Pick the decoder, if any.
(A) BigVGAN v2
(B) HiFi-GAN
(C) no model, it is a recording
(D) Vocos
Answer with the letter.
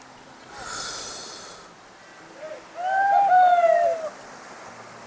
A